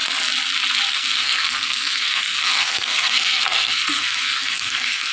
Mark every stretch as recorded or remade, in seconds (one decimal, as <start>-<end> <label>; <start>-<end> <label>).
0.0-0.9 recorded; 0.9-5.1 remade